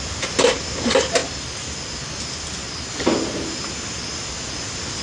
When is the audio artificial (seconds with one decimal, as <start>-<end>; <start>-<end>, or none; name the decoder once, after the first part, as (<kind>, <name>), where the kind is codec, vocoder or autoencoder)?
none